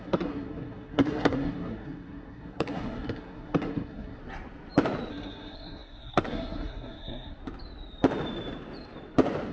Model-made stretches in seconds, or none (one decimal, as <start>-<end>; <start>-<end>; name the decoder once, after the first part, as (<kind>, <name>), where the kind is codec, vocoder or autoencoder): 0.0-4.2 (codec, SNAC); 5.1-7.4